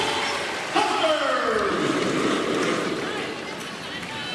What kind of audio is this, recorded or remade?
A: recorded